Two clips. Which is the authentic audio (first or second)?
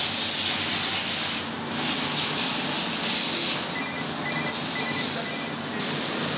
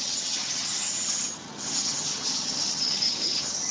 first